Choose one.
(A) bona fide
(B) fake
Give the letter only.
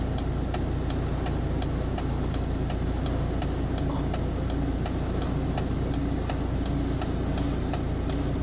A